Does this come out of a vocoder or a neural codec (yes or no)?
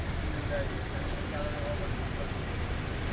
no